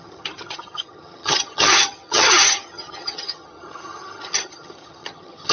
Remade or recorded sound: remade